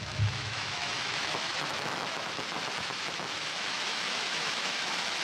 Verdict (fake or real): fake